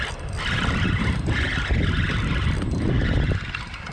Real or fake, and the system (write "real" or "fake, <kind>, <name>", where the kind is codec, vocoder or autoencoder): real